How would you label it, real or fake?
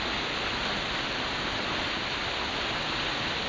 real